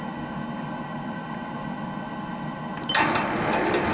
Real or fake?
real